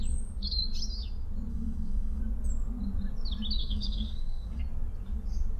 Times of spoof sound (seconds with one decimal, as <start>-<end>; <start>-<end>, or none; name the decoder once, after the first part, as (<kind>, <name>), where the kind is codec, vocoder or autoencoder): 1.5-2.2 (codec, SNAC); 3.6-4.6